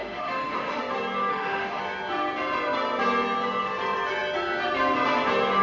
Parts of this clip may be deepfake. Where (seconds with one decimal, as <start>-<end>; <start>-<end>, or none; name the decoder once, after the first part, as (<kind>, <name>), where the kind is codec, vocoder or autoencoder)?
0.0-0.8 (autoencoder, DAC-VAE); 1.3-1.8